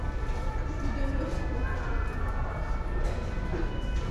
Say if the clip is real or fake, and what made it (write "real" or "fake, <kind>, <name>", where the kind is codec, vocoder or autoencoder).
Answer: real